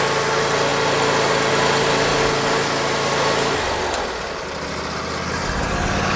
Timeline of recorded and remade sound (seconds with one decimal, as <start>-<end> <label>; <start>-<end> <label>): 0.0-6.2 recorded